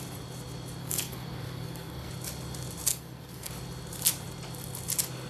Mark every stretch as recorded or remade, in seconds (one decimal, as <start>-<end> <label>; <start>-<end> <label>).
0.0-0.8 recorded; 0.8-2.1 remade; 2.1-2.9 recorded; 2.9-3.5 remade; 3.5-5.3 recorded